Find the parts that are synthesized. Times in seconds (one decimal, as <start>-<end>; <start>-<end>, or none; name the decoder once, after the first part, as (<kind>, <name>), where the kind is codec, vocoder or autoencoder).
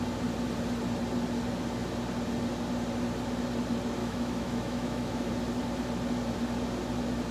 4.0-5.3 (autoencoder, DAC-VAE)